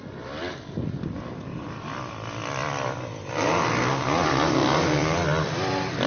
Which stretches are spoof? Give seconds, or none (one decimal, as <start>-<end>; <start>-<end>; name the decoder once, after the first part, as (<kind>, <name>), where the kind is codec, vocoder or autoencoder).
4.6-6.1 (vocoder, BigVGAN v2)